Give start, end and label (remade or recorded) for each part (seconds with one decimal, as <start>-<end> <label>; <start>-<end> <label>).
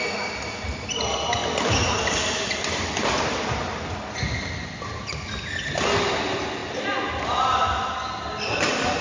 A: 0.0-9.0 recorded